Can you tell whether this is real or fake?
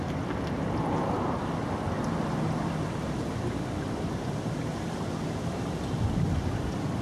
real